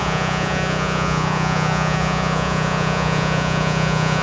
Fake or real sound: fake